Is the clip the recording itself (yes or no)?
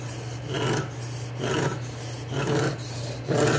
yes